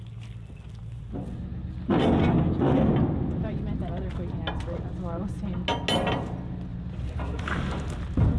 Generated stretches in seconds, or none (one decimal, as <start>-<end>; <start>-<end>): 6.7-8.0